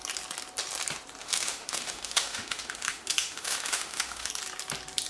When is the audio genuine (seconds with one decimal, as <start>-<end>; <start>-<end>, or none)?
0.0-1.2; 4.3-5.1